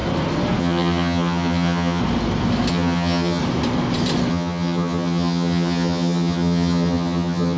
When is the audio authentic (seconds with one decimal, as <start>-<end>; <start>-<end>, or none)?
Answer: 0.0-0.6; 2.0-2.7; 3.4-4.3